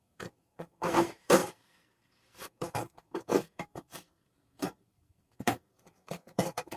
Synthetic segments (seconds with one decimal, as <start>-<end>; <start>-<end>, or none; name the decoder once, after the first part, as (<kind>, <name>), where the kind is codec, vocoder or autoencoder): 0.0-6.8 (codec, SNAC)